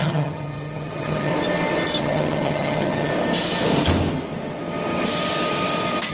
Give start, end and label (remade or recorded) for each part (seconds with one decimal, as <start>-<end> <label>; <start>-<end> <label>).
0.0-1.3 remade; 1.3-2.0 recorded; 2.0-3.1 remade; 3.1-6.1 recorded